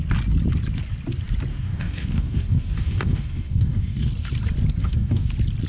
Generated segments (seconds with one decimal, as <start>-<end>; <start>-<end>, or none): 1.5-4.1; 4.8-5.3